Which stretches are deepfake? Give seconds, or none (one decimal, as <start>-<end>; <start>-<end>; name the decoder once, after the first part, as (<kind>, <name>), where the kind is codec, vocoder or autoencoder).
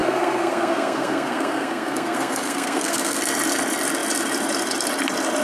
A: 0.0-3.2 (codec, SNAC)